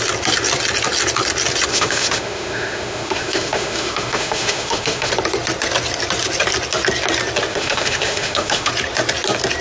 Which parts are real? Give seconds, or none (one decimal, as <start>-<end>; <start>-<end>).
0.0-1.7; 5.1-7.5; 8.7-9.6

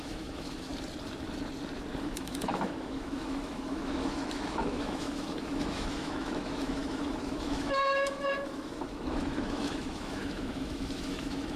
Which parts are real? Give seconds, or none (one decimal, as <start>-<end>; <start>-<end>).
0.7-2.0